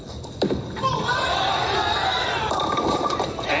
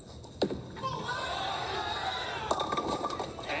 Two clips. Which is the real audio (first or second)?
second